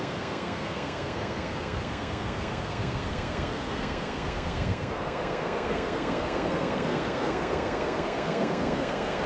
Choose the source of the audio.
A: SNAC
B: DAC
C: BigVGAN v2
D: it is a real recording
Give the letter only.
A